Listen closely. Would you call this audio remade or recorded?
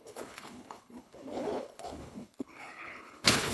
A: remade